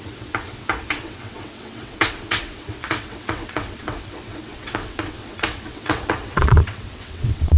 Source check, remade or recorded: remade